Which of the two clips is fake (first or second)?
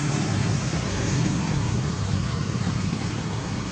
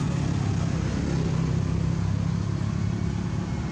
first